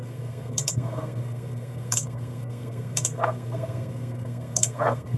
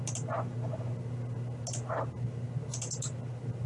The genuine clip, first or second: second